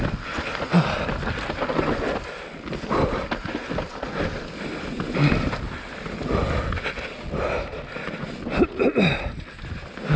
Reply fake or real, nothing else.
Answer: real